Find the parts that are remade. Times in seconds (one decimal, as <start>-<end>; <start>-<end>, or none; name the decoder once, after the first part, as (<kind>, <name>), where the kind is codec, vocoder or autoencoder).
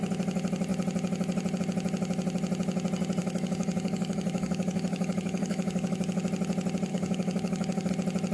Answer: 3.2-6.2 (codec, DAC); 6.9-7.9